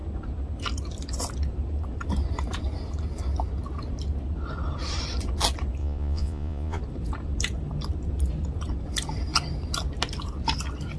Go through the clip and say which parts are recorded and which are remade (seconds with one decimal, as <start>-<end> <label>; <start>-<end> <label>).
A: 0.0-5.8 recorded; 5.8-6.8 remade; 6.8-11.0 recorded